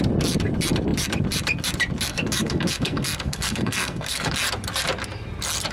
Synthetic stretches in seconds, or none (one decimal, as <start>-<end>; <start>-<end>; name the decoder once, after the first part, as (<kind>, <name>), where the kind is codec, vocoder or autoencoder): 2.1-4.3 (codec, SNAC)